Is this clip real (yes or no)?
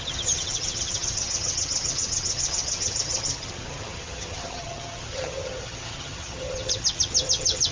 no